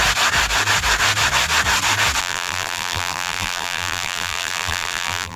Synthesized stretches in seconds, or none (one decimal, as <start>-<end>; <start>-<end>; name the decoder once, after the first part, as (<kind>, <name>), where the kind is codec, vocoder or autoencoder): 2.2-5.4 (vocoder, BigVGAN v2)